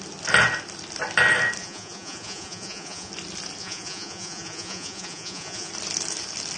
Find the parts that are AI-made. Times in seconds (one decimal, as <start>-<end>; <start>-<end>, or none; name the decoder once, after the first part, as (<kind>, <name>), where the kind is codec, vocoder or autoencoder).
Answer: 1.6-3.1 (vocoder, Vocos); 3.6-5.7